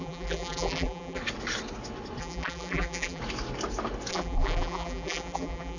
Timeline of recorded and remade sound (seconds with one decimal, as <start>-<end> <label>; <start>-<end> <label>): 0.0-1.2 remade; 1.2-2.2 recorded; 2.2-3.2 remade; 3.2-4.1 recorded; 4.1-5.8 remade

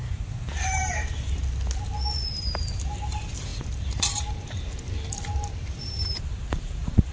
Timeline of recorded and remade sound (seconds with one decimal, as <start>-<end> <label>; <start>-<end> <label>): 0.0-1.4 remade; 1.4-2.3 recorded; 2.3-7.1 remade

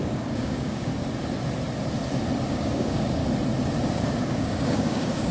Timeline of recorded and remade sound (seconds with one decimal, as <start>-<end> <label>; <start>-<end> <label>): 0.0-0.9 remade; 0.9-2.5 recorded; 2.5-3.2 remade; 3.2-3.9 recorded; 3.9-5.3 remade